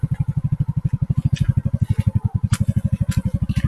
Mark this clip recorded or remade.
recorded